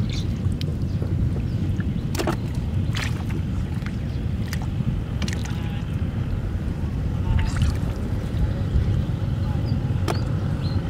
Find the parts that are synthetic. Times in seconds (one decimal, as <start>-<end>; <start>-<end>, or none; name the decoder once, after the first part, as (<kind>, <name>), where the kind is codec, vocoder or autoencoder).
2.3-4.0 (vocoder, BigVGAN v2); 5.4-9.6